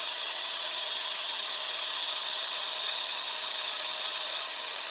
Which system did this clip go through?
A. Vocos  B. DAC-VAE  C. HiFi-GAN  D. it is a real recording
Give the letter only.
C